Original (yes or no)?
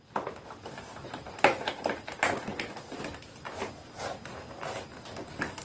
yes